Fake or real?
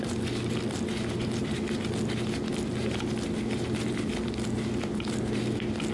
real